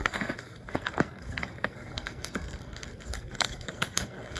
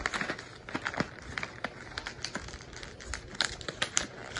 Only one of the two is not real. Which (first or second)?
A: first